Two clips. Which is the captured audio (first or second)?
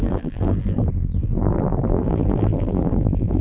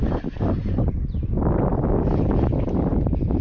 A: second